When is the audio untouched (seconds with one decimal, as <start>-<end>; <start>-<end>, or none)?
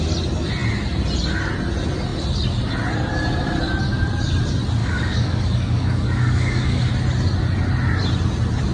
0.0-4.8; 6.9-8.7